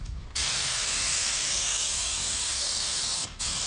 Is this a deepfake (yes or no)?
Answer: yes